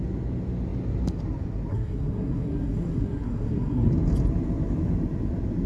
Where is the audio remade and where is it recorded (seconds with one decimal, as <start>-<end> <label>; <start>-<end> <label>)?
0.0-1.7 recorded; 1.7-3.9 remade; 3.9-5.7 recorded